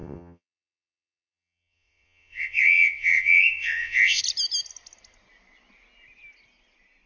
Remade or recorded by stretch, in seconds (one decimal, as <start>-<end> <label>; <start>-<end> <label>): 0.0-4.2 remade; 4.2-7.1 recorded